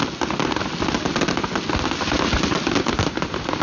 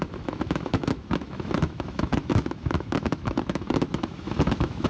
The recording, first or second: first